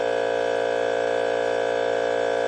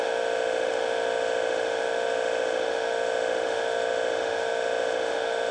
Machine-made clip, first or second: second